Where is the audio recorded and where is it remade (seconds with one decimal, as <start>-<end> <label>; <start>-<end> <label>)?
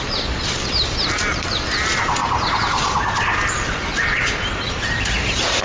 0.0-2.2 recorded; 2.2-4.8 remade; 4.8-5.6 recorded